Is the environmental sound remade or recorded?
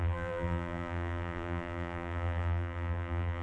remade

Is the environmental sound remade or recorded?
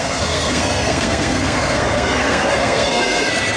remade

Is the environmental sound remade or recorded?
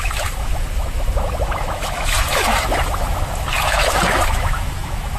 remade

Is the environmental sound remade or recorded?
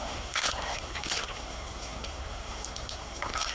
remade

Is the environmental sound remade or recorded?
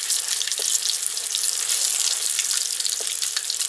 recorded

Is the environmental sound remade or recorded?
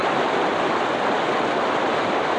recorded